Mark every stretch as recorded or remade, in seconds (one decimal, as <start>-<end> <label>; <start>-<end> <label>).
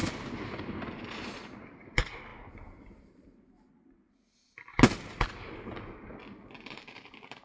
0.0-0.8 recorded; 0.8-2.3 remade; 2.3-6.7 recorded; 6.7-7.4 remade